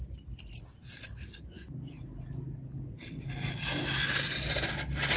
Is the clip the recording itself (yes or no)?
yes